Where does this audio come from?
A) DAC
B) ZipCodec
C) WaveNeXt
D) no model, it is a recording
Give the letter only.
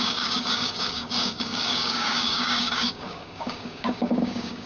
A